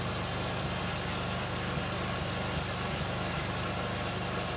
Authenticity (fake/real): real